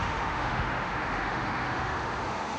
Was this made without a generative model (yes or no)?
no